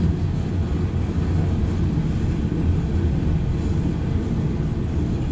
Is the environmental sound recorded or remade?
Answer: recorded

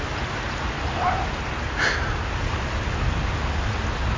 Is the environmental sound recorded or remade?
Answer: recorded